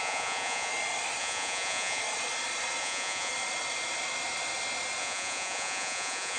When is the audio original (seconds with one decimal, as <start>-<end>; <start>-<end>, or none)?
0.7-1.2; 2.0-2.8; 3.3-5.0